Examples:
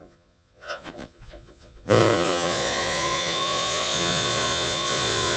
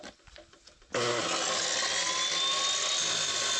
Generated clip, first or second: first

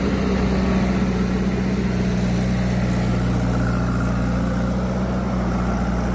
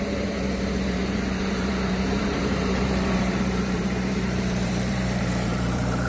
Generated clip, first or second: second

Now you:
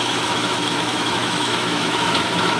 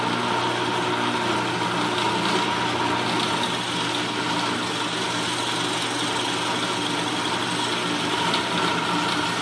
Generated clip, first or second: first